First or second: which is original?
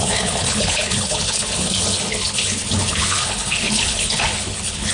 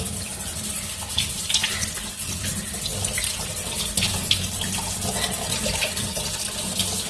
second